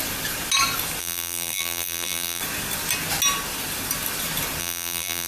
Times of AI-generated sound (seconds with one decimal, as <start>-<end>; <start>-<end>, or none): 1.0-2.4; 4.6-5.3